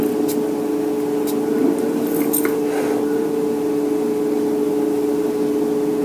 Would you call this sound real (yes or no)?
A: yes